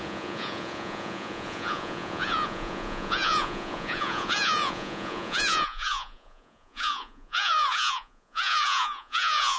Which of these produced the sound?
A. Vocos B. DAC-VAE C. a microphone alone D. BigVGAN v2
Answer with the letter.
A